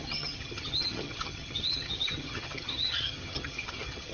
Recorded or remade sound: remade